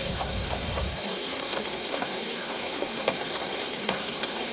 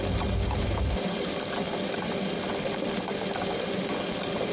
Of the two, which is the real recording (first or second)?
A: second